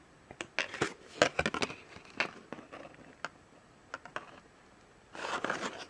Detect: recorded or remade recorded